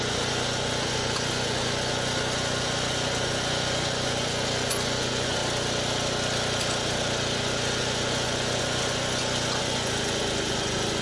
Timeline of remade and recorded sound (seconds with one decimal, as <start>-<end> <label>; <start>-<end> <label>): 0.0-5.4 remade; 5.4-7.4 recorded; 7.4-11.0 remade